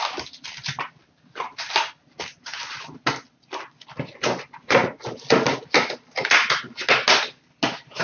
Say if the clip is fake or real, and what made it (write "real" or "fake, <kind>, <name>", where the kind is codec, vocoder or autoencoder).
real